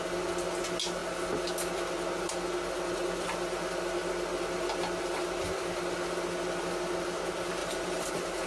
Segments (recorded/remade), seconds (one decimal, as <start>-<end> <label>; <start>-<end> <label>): 0.0-7.6 recorded; 7.6-8.1 remade; 8.1-8.5 recorded